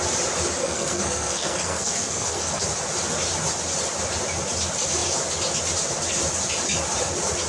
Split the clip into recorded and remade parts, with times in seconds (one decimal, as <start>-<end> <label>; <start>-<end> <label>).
0.0-0.6 recorded; 0.6-2.6 remade; 2.6-7.5 recorded